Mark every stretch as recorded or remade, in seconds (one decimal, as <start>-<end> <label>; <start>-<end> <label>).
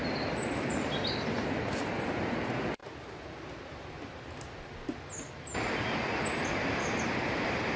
0.0-7.8 recorded